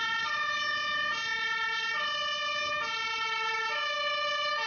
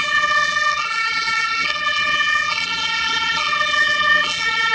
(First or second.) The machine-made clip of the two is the second